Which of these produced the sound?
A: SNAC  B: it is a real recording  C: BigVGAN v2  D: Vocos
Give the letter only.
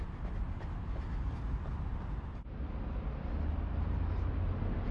B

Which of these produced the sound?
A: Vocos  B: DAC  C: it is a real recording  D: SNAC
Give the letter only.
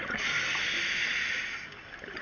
C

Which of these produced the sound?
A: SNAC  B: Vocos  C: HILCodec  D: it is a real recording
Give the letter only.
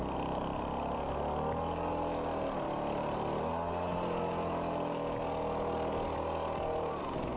D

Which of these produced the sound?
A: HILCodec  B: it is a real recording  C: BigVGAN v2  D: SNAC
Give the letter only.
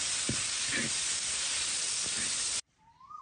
B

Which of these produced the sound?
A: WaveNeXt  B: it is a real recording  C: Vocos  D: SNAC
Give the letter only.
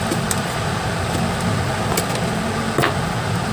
B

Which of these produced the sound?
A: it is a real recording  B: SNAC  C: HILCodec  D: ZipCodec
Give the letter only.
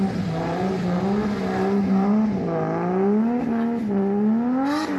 A